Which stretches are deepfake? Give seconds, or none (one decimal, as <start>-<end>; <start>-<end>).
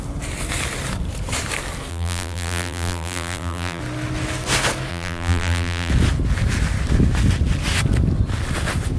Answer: 1.9-3.8; 4.9-5.9